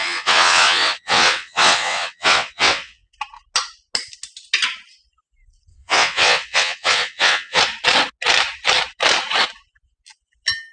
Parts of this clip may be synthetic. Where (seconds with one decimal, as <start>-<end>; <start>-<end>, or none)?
0.0-3.1; 5.7-7.6